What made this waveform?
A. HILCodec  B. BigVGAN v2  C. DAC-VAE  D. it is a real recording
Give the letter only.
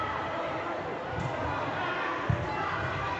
D